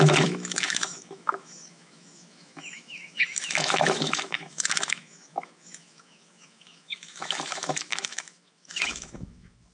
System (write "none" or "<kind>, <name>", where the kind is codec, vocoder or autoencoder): autoencoder, DAC-VAE